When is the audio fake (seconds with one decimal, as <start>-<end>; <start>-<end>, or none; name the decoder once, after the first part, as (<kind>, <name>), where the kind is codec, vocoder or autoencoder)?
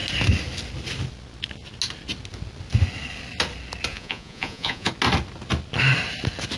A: 3.9-4.9 (vocoder, Vocos)